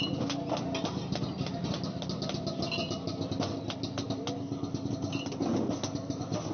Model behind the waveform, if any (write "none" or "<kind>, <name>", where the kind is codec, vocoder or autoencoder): none